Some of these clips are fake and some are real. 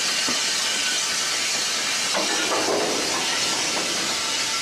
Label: real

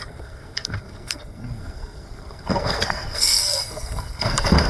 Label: fake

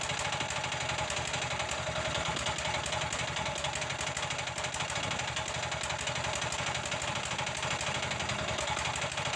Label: real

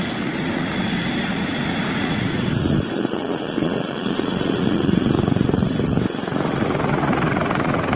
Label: fake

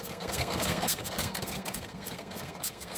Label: fake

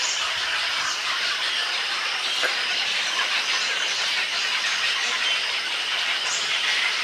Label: real